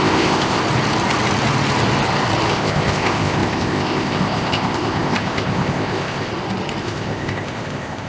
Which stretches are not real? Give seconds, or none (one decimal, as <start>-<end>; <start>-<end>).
0.0-0.6; 2.5-6.3; 6.8-8.1